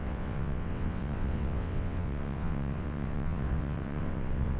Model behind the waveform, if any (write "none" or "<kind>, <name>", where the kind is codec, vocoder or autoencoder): vocoder, WaveNeXt